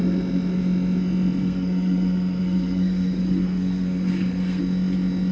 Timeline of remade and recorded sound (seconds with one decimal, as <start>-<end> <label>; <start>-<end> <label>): 0.0-1.4 recorded; 1.4-4.6 remade; 4.6-5.3 recorded